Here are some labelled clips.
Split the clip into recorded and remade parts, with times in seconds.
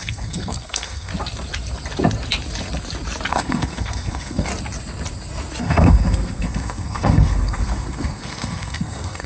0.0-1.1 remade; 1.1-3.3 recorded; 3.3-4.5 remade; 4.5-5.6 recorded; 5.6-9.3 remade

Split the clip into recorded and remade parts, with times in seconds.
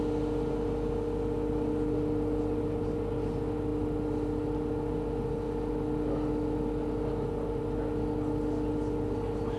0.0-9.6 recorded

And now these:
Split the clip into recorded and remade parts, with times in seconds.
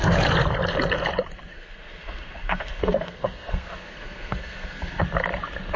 0.0-1.5 recorded; 1.5-5.0 remade; 5.0-5.8 recorded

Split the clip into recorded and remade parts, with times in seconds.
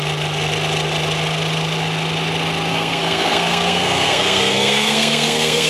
0.0-2.7 recorded; 2.7-5.7 remade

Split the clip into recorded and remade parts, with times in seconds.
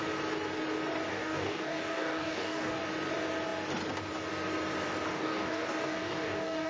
0.0-1.1 recorded; 1.1-2.8 remade; 2.8-5.1 recorded; 5.1-6.7 remade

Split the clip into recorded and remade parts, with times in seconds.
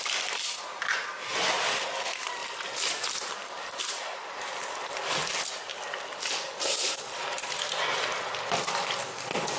0.0-2.4 recorded; 2.4-3.8 remade; 3.8-4.2 recorded; 4.2-5.0 remade; 5.0-9.6 recorded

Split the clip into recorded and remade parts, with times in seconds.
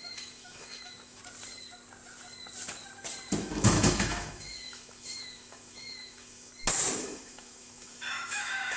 0.0-1.2 remade; 1.2-3.4 recorded; 3.4-6.5 remade; 6.5-7.0 recorded; 7.0-8.8 remade